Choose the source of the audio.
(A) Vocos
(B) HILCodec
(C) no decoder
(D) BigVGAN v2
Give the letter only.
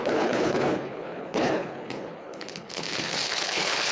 B